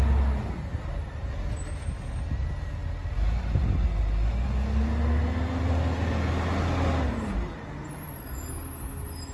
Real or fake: real